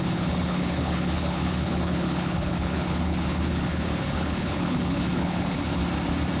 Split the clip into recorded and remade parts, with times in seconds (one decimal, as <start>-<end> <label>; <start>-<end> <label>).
0.0-5.8 remade; 5.8-6.4 recorded

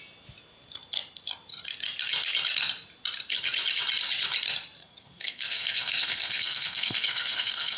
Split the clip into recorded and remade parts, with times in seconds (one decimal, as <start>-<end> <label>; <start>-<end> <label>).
0.0-4.8 recorded; 4.8-7.8 remade

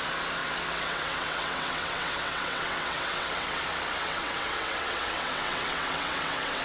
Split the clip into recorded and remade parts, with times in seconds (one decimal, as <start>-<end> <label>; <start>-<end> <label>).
0.0-0.4 recorded; 0.4-3.6 remade; 3.6-4.0 recorded; 4.0-6.6 remade

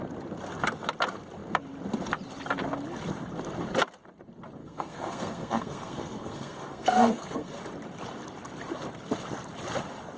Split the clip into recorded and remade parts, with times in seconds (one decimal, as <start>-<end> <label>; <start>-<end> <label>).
0.0-4.6 recorded; 4.6-7.6 remade; 7.6-10.2 recorded

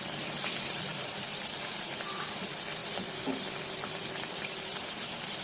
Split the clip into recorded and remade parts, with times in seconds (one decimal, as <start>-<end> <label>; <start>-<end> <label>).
0.0-0.9 recorded; 0.9-1.9 remade; 1.9-2.8 recorded; 2.8-3.5 remade; 3.5-5.4 recorded

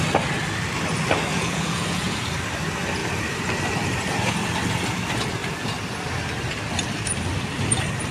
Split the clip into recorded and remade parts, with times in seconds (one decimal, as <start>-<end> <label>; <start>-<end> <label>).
0.0-1.3 recorded; 1.3-2.2 remade; 2.2-8.1 recorded

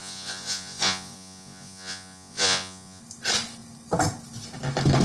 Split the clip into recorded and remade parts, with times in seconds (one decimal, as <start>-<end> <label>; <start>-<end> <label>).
0.0-3.0 remade; 3.0-5.0 recorded

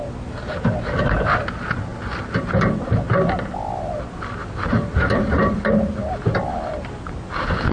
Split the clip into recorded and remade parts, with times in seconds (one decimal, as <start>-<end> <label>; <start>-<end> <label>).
0.0-7.7 recorded